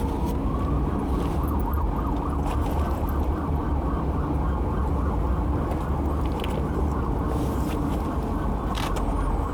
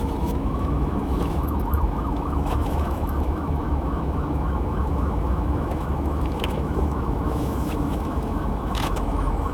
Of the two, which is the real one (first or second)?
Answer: first